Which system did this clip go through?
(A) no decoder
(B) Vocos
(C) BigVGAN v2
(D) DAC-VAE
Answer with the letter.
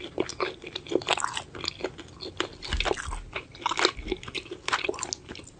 A